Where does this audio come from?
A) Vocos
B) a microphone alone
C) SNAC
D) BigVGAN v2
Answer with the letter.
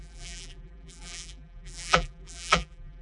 D